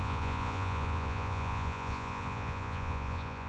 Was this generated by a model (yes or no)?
yes